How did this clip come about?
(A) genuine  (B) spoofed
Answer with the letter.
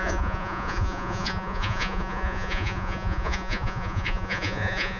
B